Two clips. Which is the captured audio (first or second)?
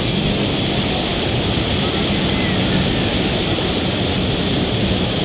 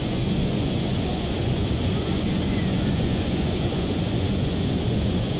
first